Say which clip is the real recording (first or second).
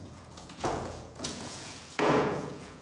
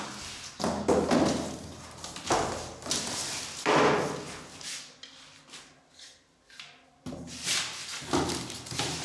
second